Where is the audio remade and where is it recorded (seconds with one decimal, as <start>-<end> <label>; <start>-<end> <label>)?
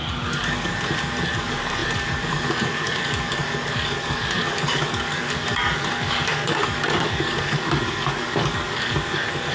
0.0-0.7 remade; 0.7-1.4 recorded; 1.4-9.5 remade